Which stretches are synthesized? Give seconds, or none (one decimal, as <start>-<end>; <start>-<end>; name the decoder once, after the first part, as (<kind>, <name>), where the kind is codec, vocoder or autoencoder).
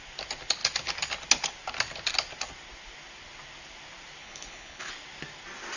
4.2-4.9 (codec, HILCodec)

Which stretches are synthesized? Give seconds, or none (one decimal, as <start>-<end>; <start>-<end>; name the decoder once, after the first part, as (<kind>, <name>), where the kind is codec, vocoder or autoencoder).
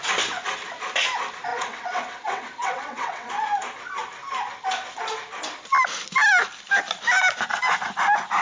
1.5-3.3 (vocoder, WaveNeXt)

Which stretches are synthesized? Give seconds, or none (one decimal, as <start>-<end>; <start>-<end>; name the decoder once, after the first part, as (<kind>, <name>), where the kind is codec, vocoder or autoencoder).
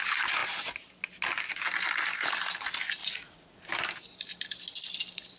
3.0-3.7 (vocoder, Vocos)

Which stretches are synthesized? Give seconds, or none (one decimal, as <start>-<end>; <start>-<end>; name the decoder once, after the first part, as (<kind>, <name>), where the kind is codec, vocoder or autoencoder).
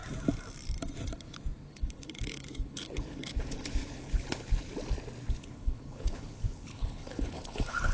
1.7-4.7 (codec, HILCodec); 5.3-7.9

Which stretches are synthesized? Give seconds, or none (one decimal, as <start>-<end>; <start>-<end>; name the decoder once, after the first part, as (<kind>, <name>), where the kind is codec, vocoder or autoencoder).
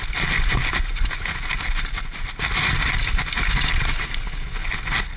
none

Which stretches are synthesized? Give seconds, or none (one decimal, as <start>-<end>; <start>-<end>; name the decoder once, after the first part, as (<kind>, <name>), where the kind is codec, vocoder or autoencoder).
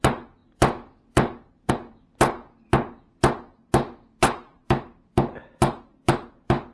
none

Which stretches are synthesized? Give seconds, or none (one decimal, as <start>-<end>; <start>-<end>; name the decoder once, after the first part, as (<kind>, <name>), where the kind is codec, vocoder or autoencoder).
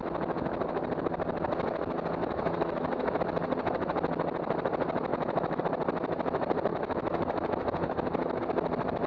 2.2-3.2 (autoencoder, DAC-VAE); 5.1-5.6; 6.7-8.4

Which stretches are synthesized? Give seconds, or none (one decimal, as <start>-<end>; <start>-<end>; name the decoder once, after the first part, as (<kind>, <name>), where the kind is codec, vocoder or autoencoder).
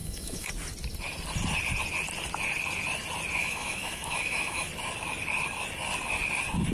0.0-0.5 (autoencoder, DAC-VAE); 3.4-4.7